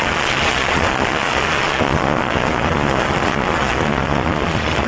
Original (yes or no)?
no